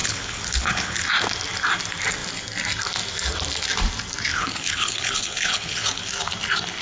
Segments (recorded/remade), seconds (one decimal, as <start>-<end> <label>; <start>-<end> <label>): 0.0-1.0 remade; 1.0-4.3 recorded; 4.3-6.1 remade; 6.1-6.8 recorded